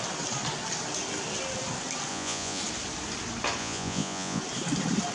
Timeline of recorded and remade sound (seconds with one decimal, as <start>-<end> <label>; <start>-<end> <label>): 0.0-2.1 recorded; 2.1-2.6 remade; 2.6-3.6 recorded; 3.6-4.4 remade; 4.4-5.1 recorded